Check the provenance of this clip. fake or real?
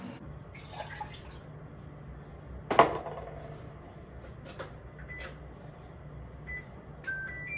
real